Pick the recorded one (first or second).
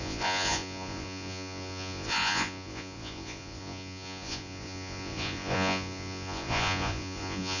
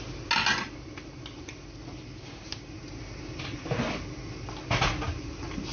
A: second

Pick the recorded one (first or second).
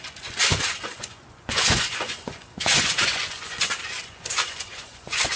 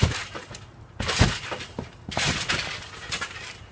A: second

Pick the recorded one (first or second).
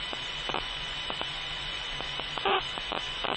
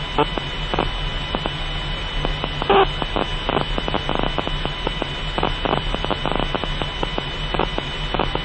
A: second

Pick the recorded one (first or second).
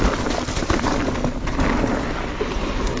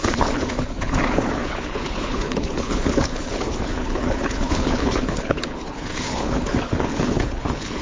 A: first